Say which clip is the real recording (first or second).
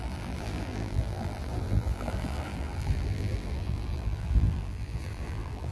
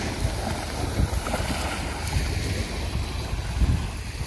second